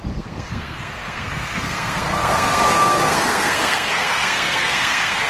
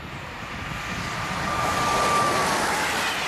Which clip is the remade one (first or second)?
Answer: first